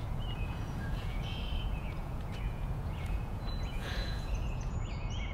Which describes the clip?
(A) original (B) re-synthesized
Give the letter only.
B